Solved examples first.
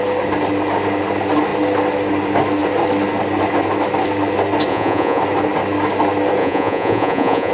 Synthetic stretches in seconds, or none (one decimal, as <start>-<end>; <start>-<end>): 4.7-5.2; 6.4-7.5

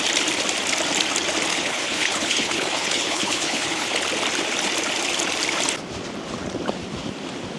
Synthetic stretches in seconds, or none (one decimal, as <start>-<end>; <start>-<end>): 1.5-3.9

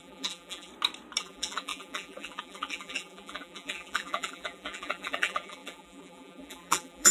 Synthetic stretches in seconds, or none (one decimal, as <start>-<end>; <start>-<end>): 0.0-0.7; 1.2-7.1

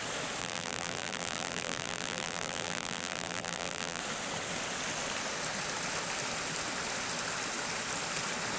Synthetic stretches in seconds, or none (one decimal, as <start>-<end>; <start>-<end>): 0.4-4.0

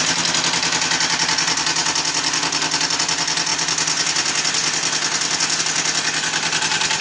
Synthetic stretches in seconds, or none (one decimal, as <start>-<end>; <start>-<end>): none

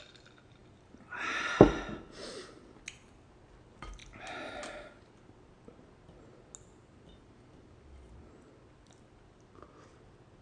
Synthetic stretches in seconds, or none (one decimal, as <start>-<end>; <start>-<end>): none

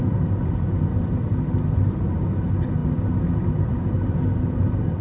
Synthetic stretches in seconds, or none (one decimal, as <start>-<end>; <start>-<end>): none